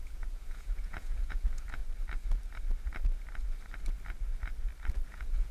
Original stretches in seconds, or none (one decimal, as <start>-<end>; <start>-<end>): 1.8-5.1